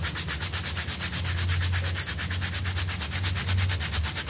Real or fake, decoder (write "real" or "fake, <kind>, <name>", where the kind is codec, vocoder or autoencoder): real